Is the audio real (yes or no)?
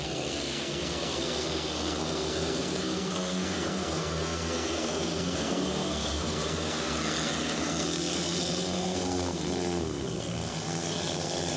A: no